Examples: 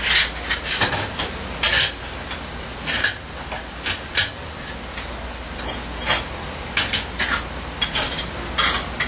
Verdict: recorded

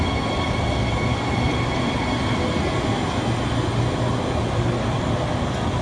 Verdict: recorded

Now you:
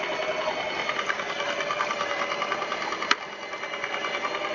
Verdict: recorded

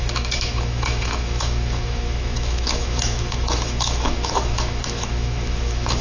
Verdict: remade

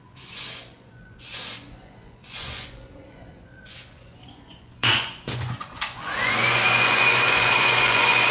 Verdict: remade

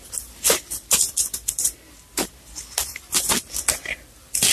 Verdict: recorded